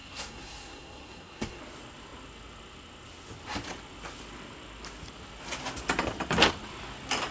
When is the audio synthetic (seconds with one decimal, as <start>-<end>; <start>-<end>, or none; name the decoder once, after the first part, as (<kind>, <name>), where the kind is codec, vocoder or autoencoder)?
0.0-1.6 (codec, SNAC)